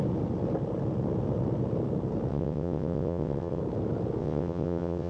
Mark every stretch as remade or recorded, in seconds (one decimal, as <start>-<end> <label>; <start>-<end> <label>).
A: 0.0-2.3 recorded; 2.3-3.6 remade; 3.6-4.2 recorded; 4.2-5.1 remade